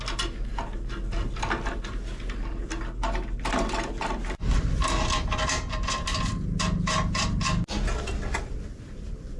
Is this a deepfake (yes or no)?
no